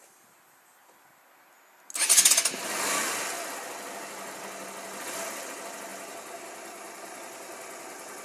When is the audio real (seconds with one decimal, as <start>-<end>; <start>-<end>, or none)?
0.0-8.2

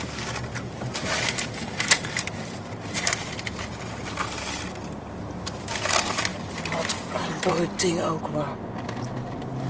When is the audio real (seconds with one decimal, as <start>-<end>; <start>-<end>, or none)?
0.0-1.0; 3.3-9.7

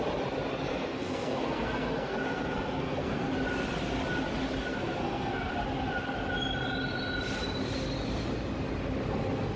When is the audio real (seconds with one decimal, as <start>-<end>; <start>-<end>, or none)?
0.0-0.7; 3.3-4.7; 5.5-9.6

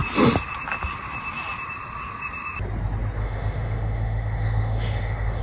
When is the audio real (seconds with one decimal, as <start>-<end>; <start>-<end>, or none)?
0.0-3.2

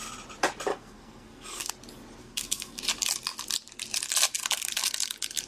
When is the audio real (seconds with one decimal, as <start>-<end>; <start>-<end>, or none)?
0.0-0.7; 1.7-2.2; 2.8-5.5